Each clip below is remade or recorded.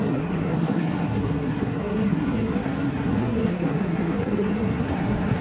remade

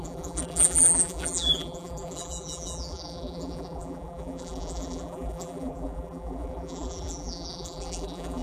remade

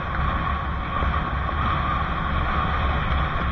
recorded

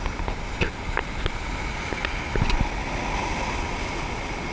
recorded